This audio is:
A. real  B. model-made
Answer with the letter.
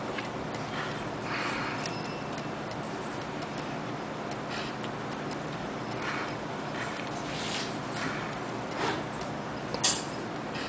A